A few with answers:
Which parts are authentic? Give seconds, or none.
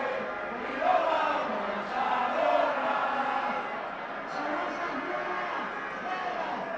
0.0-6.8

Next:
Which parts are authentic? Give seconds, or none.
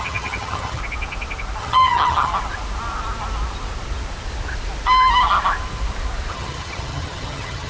0.8-1.6; 2.3-6.3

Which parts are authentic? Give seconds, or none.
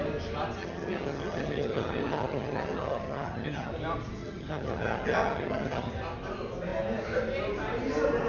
0.0-0.6; 3.7-4.2; 5.9-8.3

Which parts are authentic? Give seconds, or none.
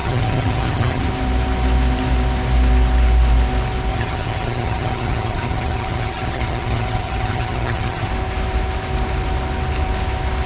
1.1-3.9; 8.1-10.5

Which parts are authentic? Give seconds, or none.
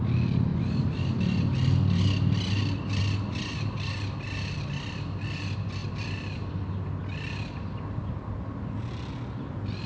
0.0-9.9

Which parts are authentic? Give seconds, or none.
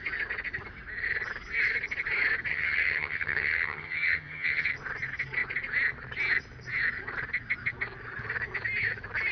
0.0-2.5; 4.7-9.3